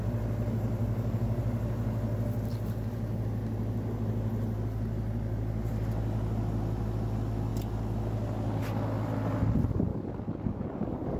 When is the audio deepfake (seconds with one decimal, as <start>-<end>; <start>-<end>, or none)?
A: 0.8-1.4; 9.9-11.2